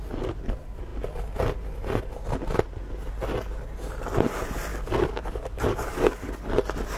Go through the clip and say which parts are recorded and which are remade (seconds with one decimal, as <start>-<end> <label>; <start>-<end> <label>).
0.0-4.7 recorded; 4.7-6.3 remade; 6.3-7.0 recorded